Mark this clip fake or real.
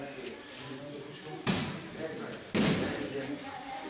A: real